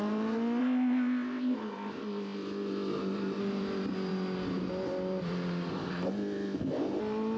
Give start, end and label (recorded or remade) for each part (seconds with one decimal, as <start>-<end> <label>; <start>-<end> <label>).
0.0-0.6 recorded; 0.6-3.4 remade; 3.4-5.7 recorded; 5.7-7.0 remade; 7.0-7.4 recorded